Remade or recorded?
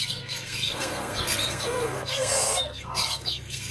remade